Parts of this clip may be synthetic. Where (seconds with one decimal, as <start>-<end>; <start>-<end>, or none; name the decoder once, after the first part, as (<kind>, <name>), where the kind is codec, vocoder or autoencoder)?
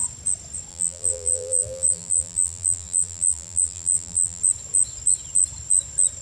0.7-4.4 (vocoder, BigVGAN v2)